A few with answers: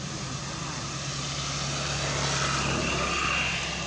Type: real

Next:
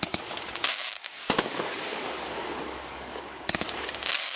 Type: fake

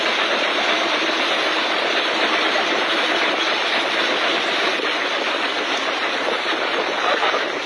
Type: real